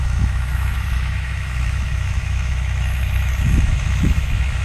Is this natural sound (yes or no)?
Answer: no